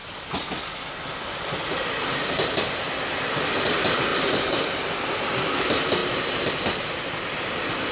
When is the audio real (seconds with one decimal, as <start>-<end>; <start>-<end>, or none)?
0.0-4.1; 4.7-6.0; 6.5-7.9